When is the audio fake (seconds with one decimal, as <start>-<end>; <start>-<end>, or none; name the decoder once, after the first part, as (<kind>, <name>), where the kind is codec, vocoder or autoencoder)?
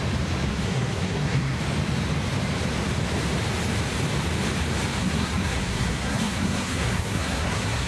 0.5-1.6 (codec, SNAC); 5.0-7.9